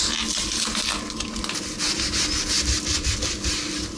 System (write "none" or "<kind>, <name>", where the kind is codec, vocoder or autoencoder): none